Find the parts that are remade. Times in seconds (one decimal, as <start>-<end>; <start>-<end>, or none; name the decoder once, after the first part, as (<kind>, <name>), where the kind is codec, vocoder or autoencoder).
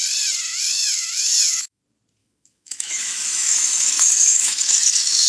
0.5-1.8 (autoencoder, DAC-VAE); 2.2-5.3